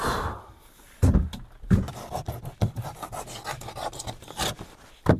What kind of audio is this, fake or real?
real